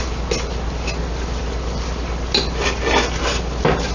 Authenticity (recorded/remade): recorded